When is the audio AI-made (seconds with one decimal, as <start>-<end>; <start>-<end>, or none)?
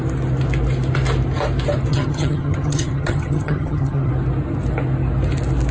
1.9-4.1